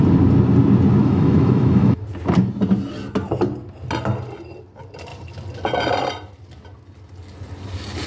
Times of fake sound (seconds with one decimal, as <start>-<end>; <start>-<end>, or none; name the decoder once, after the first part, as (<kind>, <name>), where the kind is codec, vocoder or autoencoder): 1.0-2.0 (autoencoder, DAC-VAE)